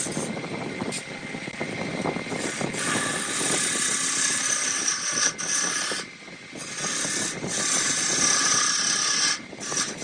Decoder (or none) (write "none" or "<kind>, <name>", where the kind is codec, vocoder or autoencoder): none